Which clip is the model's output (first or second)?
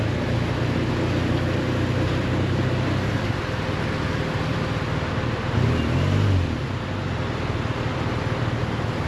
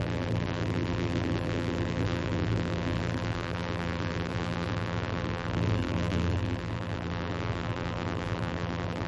second